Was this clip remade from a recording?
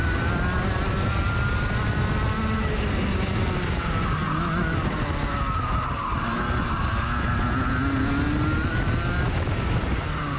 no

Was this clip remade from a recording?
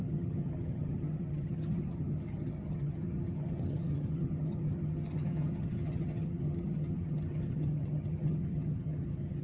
yes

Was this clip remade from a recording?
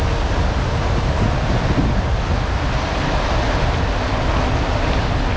no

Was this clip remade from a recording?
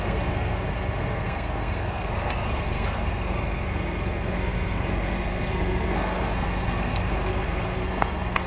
yes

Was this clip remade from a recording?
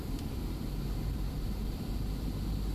yes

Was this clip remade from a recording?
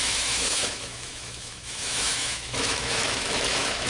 yes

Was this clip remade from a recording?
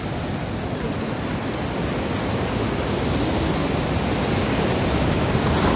no